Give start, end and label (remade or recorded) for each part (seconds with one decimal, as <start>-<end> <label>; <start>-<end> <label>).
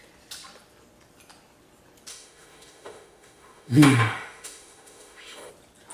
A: 0.0-2.1 recorded; 2.1-5.5 remade; 5.5-5.9 recorded